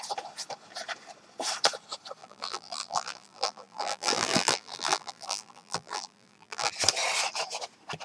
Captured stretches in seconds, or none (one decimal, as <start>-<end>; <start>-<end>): 0.0-2.2; 6.7-8.0